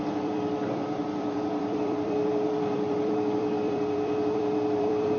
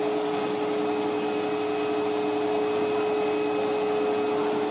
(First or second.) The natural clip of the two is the second